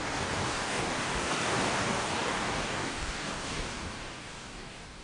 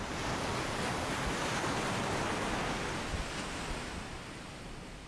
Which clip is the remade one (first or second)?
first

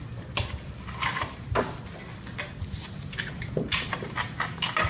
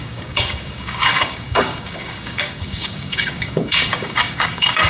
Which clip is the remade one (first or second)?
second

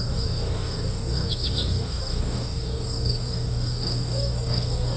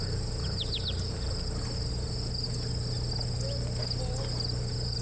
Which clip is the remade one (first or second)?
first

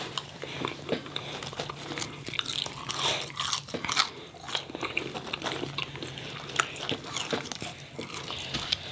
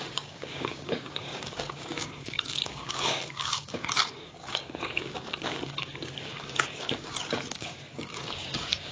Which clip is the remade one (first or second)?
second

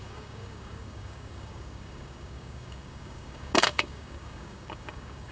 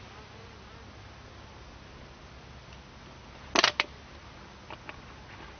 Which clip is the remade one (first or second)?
first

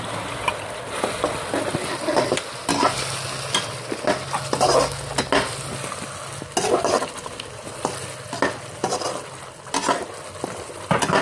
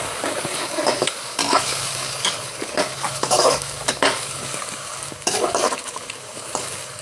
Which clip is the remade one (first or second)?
second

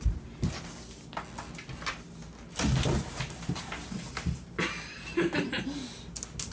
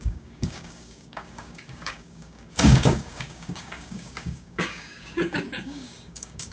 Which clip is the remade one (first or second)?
second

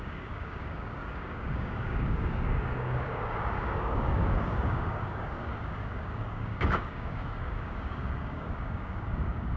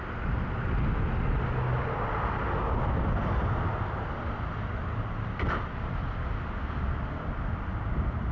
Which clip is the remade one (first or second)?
first